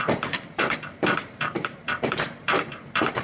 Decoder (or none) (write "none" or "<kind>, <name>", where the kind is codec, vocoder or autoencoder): vocoder, BigVGAN v2